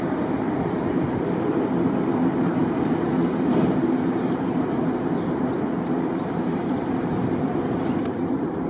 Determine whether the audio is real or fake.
fake